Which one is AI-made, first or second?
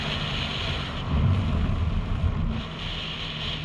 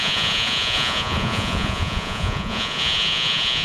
second